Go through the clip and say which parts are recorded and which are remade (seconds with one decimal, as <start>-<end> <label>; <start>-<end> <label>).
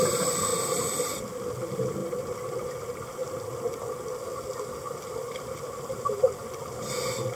0.0-2.0 recorded; 2.0-2.7 remade; 2.7-7.3 recorded